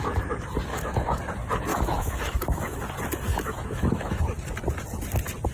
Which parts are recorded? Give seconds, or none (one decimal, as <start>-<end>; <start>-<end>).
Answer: 0.0-0.7; 1.2-1.7; 2.8-3.3; 4.2-5.5